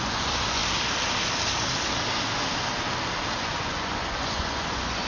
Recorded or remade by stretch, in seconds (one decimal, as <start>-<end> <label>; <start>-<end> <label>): 0.0-0.6 remade; 0.6-3.4 recorded; 3.4-5.1 remade